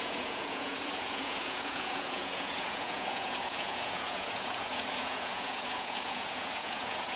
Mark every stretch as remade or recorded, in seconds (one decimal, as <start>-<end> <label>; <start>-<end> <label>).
0.0-7.2 remade